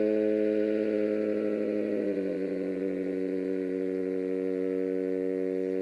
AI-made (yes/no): yes